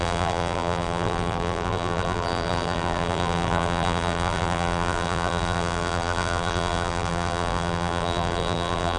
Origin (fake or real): fake